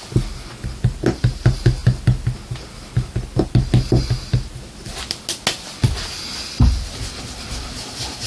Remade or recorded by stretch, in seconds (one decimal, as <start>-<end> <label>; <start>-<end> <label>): 0.0-8.3 recorded